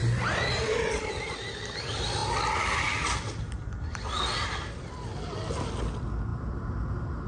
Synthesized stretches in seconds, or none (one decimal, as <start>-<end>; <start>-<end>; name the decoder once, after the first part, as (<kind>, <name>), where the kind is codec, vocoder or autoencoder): none